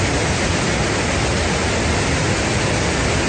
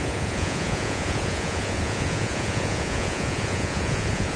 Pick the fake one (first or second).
second